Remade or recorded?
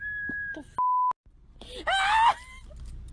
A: recorded